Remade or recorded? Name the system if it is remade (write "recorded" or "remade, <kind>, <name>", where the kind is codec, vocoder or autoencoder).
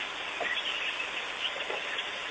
recorded